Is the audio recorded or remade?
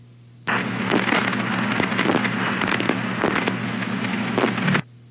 recorded